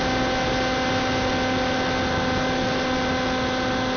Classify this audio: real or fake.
real